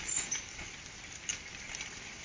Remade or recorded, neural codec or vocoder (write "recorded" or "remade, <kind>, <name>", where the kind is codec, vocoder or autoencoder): recorded